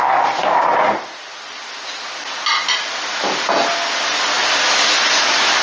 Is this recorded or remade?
recorded